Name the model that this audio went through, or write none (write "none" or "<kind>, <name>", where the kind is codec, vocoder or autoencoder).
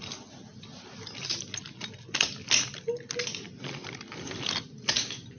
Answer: none